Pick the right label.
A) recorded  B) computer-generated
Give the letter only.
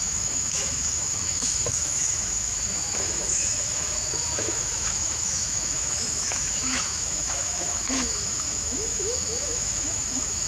B